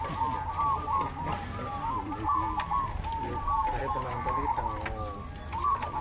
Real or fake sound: real